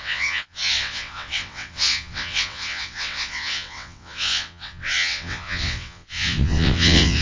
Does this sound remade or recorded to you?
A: remade